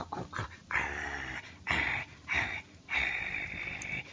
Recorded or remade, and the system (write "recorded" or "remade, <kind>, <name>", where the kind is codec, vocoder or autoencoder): recorded